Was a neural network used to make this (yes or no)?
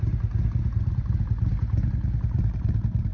yes